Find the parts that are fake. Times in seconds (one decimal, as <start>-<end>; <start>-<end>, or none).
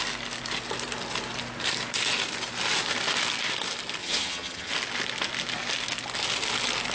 4.0-4.7